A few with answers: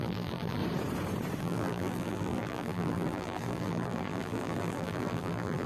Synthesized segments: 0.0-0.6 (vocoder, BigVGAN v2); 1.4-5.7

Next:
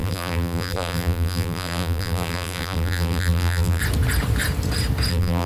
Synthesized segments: 0.0-3.8 (vocoder, BigVGAN v2); 5.1-5.5

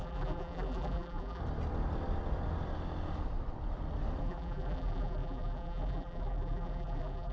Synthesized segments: 0.0-1.4 (vocoder, BigVGAN v2); 4.2-7.3